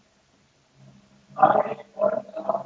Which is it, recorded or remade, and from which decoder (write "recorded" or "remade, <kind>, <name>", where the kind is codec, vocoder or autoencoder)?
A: recorded